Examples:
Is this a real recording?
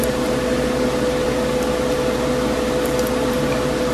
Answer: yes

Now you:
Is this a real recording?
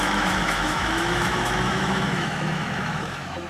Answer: no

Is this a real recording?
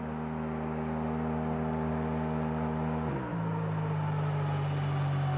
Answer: yes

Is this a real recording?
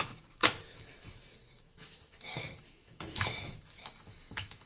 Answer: no